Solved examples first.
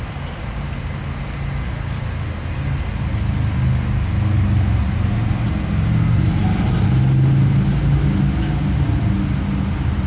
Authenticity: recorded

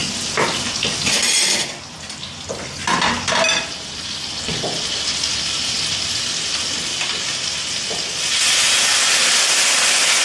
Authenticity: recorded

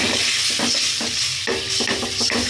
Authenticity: recorded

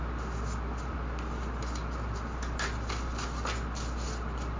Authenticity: recorded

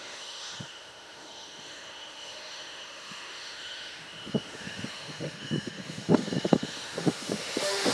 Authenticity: remade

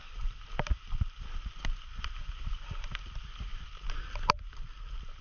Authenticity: recorded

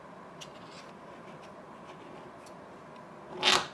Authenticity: recorded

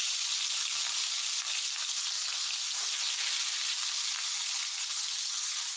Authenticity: recorded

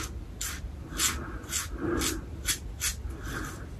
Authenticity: recorded